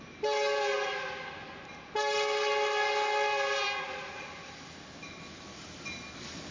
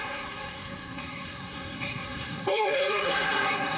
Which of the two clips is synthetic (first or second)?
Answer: second